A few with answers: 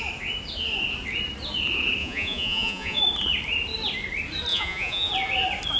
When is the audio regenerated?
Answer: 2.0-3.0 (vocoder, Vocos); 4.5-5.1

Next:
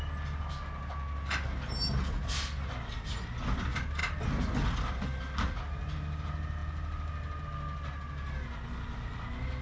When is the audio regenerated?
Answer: none

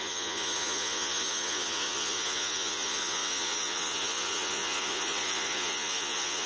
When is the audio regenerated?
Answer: 0.0-6.5 (vocoder, Vocos)

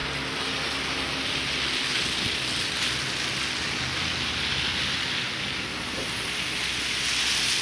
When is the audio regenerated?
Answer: none

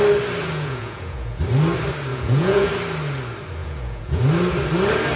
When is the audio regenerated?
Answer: 0.4-1.4 (vocoder, Vocos); 2.1-2.7; 3.6-4.2

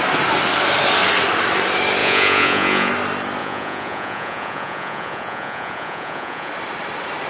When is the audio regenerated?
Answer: 2.0-2.9 (vocoder, Vocos); 3.4-6.5

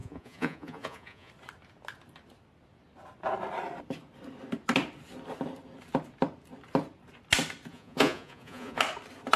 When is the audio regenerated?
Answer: 0.0-1.3 (vocoder, Vocos); 7.7-8.8